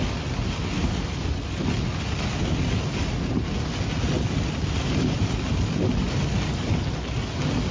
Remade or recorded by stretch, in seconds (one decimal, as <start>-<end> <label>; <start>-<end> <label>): 0.0-7.7 recorded